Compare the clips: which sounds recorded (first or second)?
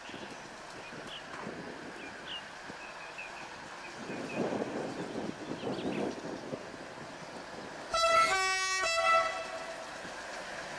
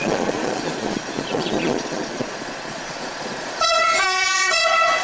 first